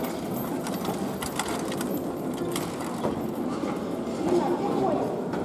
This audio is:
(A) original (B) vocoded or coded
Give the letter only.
A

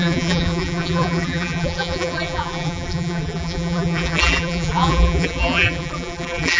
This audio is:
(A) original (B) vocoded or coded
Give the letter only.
B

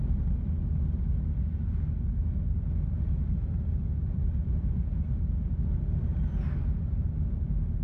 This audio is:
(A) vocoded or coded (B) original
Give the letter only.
B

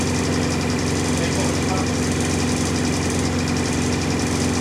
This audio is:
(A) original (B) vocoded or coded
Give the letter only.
A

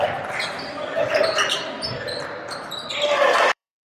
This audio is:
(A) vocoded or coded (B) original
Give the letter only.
A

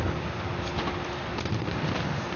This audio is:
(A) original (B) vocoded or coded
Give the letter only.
A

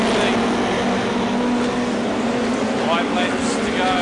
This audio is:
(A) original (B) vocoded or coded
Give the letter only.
A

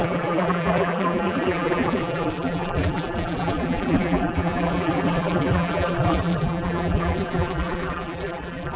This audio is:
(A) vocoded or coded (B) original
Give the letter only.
A